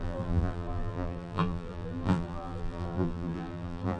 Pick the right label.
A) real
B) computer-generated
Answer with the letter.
B